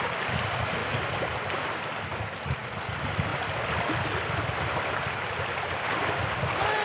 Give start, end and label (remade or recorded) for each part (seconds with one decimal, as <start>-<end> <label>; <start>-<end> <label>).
0.0-6.8 recorded